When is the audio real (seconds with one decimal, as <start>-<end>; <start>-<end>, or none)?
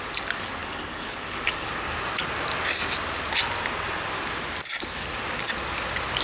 0.0-0.6; 1.7-6.2